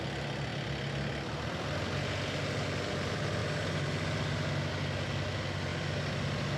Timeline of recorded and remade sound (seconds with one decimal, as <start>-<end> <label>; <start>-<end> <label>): 0.0-6.6 recorded